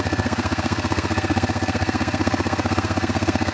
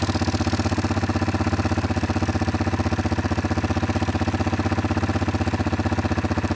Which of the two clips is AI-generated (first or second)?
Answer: first